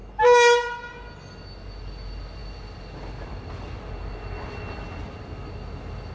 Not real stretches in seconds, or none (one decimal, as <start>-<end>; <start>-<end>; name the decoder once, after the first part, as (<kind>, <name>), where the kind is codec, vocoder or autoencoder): none

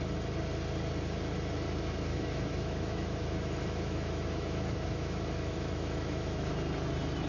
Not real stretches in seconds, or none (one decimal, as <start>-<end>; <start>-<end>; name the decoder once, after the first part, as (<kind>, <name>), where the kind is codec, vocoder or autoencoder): 2.1-6.5 (autoencoder, DAC-VAE)

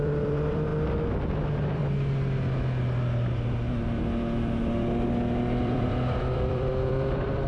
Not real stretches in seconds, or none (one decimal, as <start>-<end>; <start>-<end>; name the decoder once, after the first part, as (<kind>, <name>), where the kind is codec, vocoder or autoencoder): 0.0-0.7 (vocoder, BigVGAN v2); 1.3-1.8; 5.6-7.5

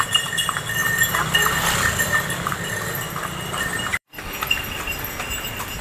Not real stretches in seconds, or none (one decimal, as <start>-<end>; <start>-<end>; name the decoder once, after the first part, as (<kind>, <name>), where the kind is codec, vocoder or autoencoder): 0.8-2.8 (vocoder, BigVGAN v2); 3.9-5.2

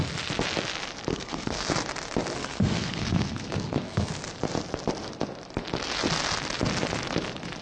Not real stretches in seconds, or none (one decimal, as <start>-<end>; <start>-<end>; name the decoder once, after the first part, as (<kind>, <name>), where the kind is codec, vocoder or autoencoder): 1.1-1.7 (codec, SNAC); 2.4-4.1

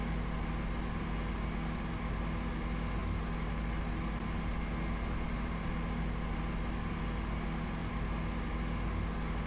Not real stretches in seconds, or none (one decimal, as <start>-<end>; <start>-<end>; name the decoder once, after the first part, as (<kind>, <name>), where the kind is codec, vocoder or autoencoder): none